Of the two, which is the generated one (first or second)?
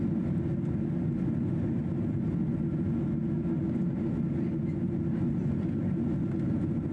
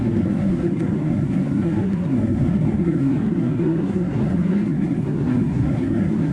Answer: second